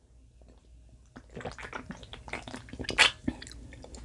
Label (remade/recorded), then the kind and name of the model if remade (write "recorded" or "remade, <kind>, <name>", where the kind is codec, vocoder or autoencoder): recorded